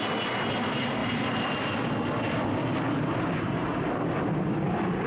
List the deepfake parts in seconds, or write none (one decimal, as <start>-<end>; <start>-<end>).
none